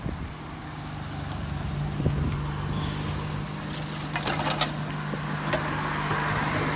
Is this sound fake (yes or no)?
no